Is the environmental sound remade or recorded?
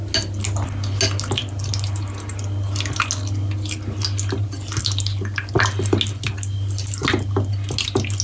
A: recorded